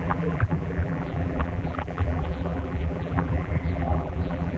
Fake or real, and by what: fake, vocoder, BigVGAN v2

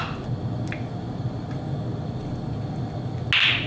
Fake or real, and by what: real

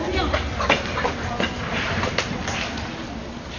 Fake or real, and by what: real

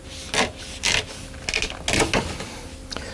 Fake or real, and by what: real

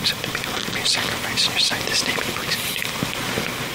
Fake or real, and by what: real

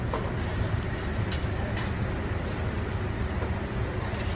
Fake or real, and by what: real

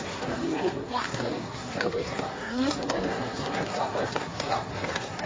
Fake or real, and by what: fake, codec, SNAC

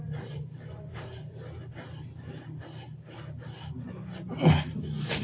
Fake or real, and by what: real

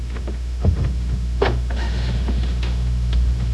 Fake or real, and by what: fake, autoencoder, DAC-VAE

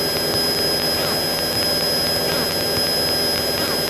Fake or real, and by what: real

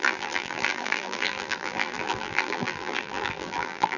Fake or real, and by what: fake, vocoder, BigVGAN v2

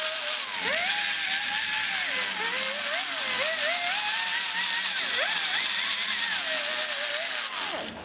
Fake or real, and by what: real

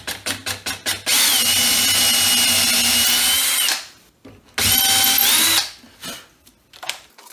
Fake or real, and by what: real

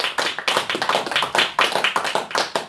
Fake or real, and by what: real